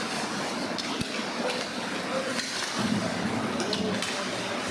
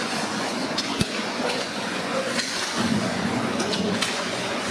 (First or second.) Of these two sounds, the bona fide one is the first